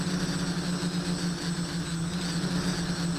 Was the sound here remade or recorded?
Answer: recorded